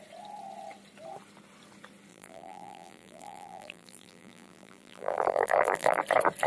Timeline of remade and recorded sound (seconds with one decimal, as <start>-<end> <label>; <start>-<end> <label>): 0.0-2.1 recorded; 2.1-6.0 remade; 6.0-6.5 recorded